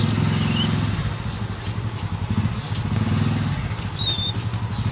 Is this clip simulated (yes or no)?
no